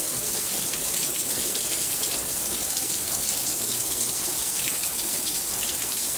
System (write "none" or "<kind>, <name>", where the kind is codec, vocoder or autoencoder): codec, SNAC